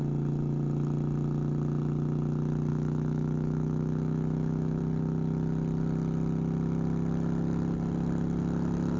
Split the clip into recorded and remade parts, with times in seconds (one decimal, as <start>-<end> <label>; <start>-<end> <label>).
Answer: 0.0-2.7 recorded; 2.7-4.8 remade; 4.8-9.0 recorded